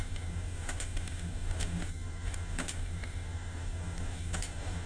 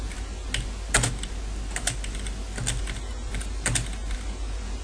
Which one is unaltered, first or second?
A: second